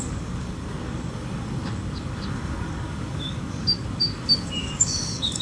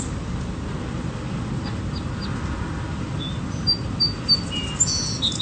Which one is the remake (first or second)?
first